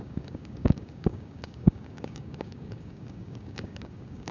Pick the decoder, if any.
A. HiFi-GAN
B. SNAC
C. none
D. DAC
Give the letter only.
D